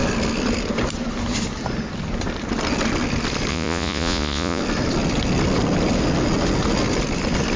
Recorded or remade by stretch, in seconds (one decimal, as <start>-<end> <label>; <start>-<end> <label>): 0.0-3.5 recorded; 3.5-4.6 remade; 4.6-7.6 recorded